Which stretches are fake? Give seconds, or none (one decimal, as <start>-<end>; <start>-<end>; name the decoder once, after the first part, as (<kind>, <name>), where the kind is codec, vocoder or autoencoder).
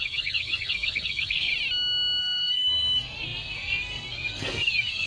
0.0-1.5 (codec, SNAC); 2.2-5.1